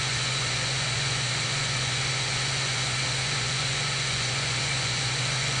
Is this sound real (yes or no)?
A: no